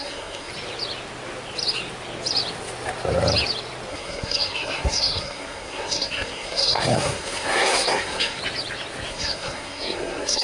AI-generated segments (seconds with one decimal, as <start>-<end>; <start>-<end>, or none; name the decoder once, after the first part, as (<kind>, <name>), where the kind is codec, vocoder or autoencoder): 0.0-0.5 (codec, SNAC); 3.9-8.4; 9.1-10.4

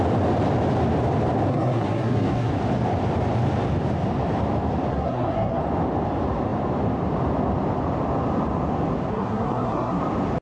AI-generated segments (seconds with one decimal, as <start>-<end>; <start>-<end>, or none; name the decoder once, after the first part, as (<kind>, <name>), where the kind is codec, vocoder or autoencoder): 1.5-2.5 (codec, SNAC); 4.9-5.6; 9.1-10.0

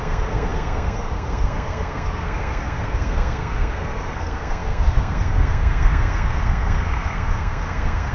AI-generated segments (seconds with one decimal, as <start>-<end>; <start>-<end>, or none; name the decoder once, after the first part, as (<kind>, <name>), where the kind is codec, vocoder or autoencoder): 0.0-8.1 (codec, SNAC)